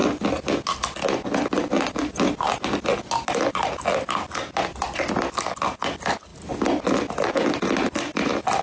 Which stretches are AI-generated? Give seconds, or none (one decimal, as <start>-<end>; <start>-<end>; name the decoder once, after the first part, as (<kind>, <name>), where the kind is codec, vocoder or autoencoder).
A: none